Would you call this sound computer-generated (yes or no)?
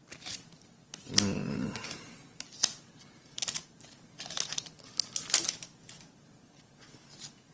no